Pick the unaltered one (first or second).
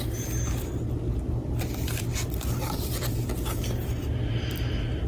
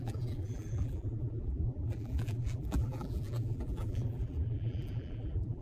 first